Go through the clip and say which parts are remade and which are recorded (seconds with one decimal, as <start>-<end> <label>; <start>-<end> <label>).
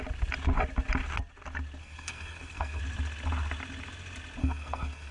0.0-1.8 recorded; 1.8-2.8 remade; 2.8-4.4 recorded; 4.4-5.1 remade